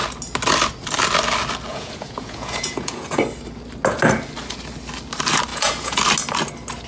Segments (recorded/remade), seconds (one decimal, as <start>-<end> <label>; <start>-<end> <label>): 0.0-1.7 recorded; 1.7-3.2 remade; 3.2-5.5 recorded; 5.5-6.0 remade; 6.0-6.9 recorded